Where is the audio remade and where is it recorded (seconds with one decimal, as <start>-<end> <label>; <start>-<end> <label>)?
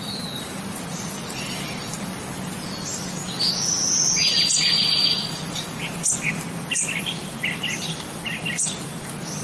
0.0-9.4 recorded